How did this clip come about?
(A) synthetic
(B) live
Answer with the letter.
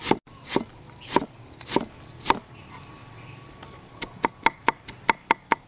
B